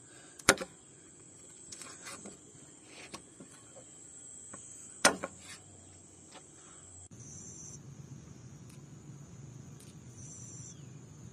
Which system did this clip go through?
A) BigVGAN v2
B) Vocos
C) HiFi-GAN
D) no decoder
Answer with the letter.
B